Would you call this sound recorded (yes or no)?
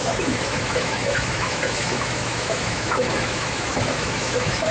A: no